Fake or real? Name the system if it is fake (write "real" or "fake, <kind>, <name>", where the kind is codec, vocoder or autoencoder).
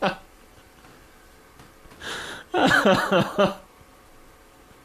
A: fake, vocoder, BigVGAN v2